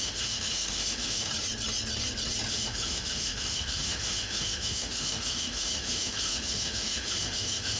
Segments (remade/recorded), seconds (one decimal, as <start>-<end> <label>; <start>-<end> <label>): 0.0-1.3 remade; 1.3-2.5 recorded; 2.5-7.8 remade